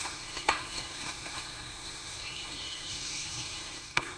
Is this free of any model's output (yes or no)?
no